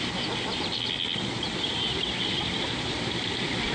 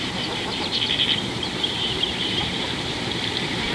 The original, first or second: first